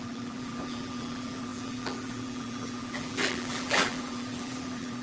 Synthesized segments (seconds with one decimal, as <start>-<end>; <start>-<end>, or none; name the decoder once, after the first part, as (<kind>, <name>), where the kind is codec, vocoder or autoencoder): 0.0-5.0 (vocoder, BigVGAN v2)